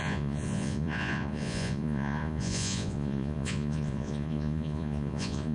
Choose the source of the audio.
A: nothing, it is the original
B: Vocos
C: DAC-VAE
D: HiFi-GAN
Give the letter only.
B